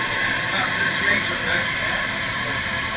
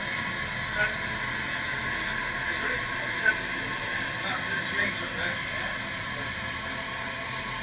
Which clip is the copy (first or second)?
first